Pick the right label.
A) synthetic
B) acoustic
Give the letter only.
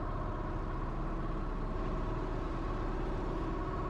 B